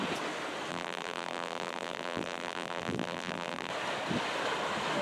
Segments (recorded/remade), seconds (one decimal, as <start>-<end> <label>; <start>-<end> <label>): 0.0-0.7 recorded; 0.7-3.7 remade; 3.7-5.0 recorded